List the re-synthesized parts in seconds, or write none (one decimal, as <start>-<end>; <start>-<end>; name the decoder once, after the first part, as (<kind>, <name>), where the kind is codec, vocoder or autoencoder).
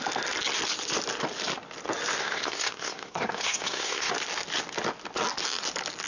2.2-4.1 (codec, SNAC)